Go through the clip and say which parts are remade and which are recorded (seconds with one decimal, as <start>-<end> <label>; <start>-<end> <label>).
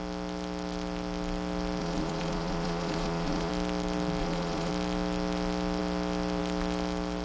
0.0-1.8 recorded; 1.8-3.5 remade; 3.5-4.2 recorded; 4.2-4.7 remade; 4.7-7.2 recorded